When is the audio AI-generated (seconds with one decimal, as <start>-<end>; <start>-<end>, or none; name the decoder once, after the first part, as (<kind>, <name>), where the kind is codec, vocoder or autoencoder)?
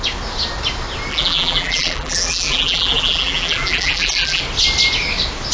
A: 1.1-4.4 (vocoder, BigVGAN v2)